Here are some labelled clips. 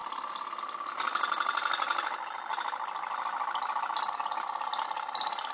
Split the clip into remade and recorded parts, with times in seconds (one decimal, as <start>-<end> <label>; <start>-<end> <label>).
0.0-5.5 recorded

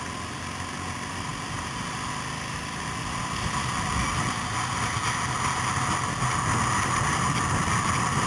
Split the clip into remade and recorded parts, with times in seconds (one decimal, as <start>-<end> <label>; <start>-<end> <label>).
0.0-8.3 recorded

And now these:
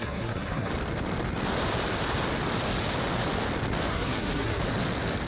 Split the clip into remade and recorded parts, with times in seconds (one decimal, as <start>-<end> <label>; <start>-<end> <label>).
0.0-0.7 remade; 0.7-3.9 recorded; 3.9-4.6 remade; 4.6-5.3 recorded

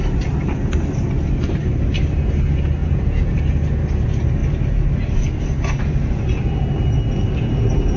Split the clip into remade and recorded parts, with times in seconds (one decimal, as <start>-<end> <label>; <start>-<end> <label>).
0.0-2.8 recorded; 2.8-3.4 remade; 3.4-8.0 recorded